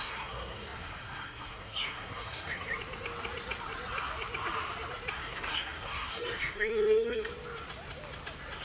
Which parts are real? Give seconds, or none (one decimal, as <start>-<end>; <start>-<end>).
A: 2.7-5.1; 7.3-8.6